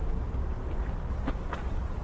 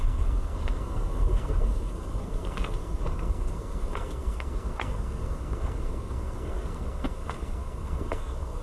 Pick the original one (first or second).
first